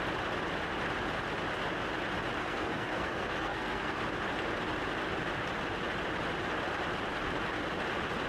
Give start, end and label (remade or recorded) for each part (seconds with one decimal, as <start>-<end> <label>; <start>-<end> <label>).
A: 0.0-2.4 recorded; 2.4-4.0 remade; 4.0-8.3 recorded